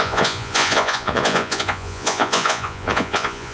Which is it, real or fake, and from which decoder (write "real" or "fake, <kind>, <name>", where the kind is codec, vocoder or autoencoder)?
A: fake, vocoder, Vocos